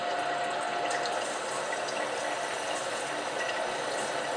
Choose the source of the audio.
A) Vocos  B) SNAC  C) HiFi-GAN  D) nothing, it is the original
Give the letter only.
D